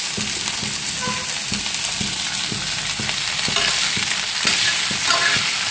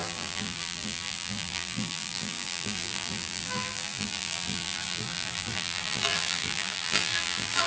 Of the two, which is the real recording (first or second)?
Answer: first